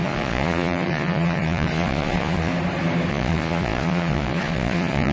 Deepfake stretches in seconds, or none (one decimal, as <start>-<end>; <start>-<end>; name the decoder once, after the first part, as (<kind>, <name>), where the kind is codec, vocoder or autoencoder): 0.0-2.5 (vocoder, Vocos); 3.1-5.1

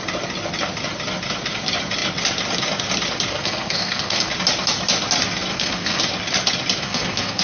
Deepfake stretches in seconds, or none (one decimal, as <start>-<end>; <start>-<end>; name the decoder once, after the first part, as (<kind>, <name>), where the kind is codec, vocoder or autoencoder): 3.3-4.3 (codec, SNAC); 5.5-6.0; 6.8-7.4

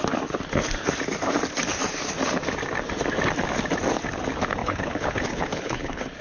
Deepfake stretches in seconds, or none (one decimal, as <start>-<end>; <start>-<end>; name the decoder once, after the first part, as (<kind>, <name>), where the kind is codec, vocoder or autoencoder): 4.6-6.2 (codec, HILCodec)